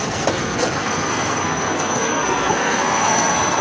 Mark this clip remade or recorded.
remade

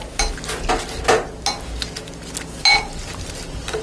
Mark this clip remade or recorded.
recorded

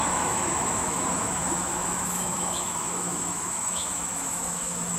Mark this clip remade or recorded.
remade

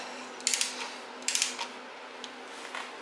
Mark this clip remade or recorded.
recorded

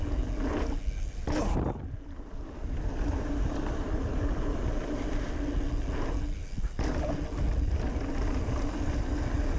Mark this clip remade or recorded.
recorded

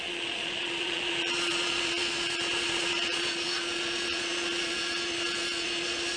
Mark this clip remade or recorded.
remade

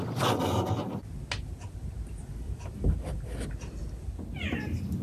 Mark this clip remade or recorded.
recorded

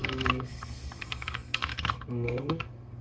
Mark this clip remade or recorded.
remade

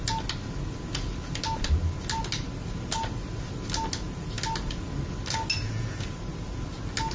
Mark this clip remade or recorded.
recorded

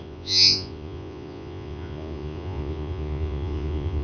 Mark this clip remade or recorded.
remade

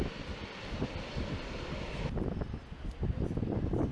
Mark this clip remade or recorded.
recorded